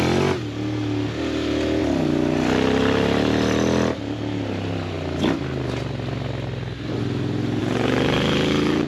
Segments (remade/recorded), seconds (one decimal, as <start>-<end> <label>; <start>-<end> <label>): 0.0-7.6 recorded; 7.6-8.9 remade